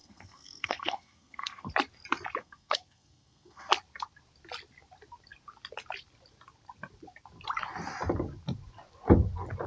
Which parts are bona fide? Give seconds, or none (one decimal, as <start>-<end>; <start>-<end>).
1.7-2.4; 3.7-9.7